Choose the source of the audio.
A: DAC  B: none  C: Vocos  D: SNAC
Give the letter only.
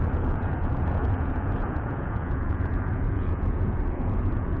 C